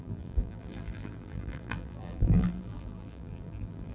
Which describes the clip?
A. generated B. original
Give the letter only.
A